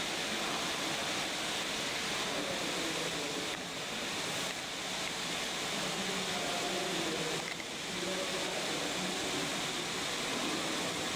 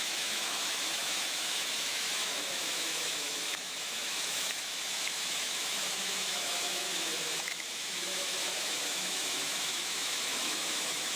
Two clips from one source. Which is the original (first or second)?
first